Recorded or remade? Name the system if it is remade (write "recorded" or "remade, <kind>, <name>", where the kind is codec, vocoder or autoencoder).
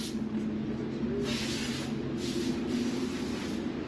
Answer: recorded